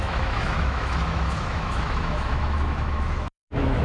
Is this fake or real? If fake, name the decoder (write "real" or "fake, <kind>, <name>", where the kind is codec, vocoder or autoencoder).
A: fake, autoencoder, DAC-VAE